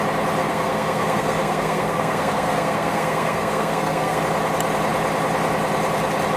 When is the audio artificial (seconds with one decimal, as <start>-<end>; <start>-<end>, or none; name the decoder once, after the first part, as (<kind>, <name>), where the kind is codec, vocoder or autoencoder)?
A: 0.4-4.2 (codec, SNAC)